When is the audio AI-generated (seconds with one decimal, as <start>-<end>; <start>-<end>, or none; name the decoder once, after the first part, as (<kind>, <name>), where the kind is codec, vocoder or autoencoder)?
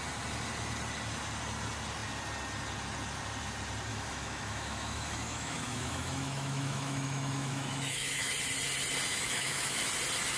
3.9-8.3 (autoencoder, DAC-VAE); 9.1-9.9